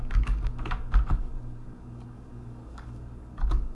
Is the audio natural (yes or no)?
no